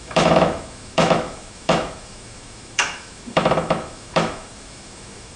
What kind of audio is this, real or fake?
fake